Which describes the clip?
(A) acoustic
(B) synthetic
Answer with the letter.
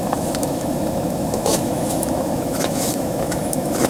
B